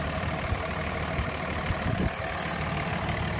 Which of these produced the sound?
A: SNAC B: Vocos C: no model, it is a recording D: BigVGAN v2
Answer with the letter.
C